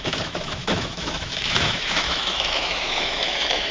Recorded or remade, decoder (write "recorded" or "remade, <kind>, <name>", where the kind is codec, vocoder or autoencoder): remade, autoencoder, DAC-VAE